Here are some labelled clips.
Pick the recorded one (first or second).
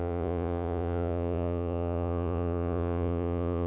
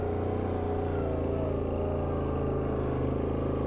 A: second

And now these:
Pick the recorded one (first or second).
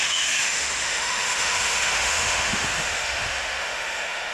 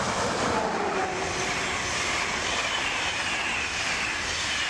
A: second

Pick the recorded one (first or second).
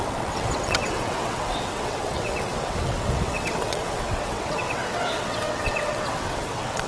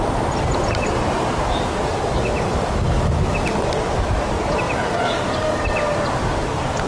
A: second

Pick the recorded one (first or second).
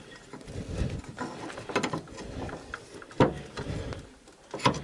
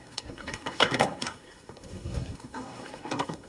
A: first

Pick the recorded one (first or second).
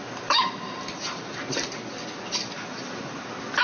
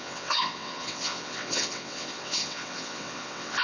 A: first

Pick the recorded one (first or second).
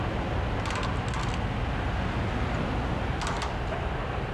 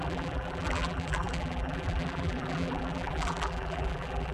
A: first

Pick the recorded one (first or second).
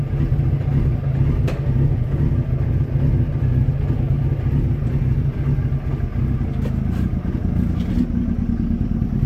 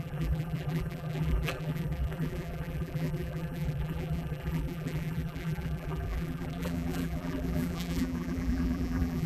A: first